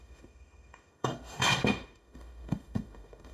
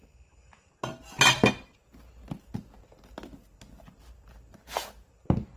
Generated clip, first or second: first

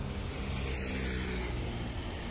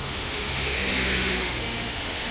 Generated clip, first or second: second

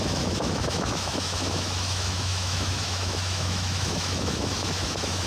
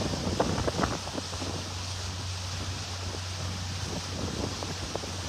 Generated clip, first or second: first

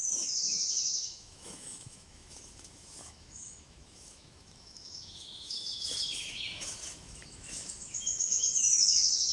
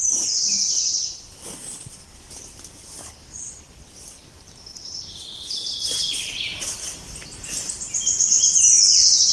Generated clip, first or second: first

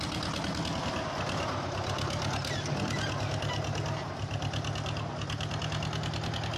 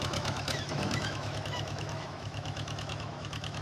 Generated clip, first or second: second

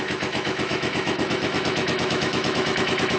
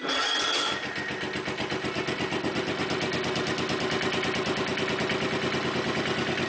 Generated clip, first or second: first